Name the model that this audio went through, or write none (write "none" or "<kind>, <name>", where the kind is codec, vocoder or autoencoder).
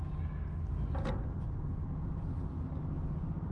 none